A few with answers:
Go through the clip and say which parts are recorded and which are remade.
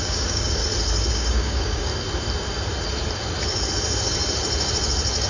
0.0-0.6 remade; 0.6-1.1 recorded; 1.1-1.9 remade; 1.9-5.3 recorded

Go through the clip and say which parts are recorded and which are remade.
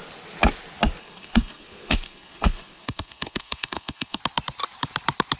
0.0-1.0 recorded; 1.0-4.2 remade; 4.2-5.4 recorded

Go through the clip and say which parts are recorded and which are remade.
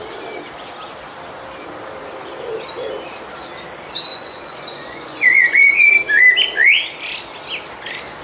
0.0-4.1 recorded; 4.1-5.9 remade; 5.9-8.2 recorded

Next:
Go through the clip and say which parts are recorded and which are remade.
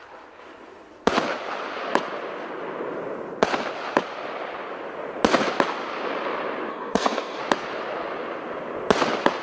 0.0-6.7 recorded; 6.7-7.4 remade; 7.4-9.4 recorded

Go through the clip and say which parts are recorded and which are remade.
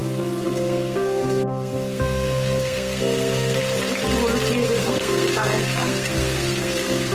0.0-3.6 remade; 3.6-4.6 recorded; 4.6-7.1 remade